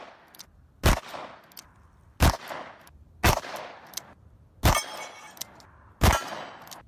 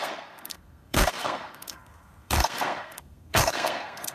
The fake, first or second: second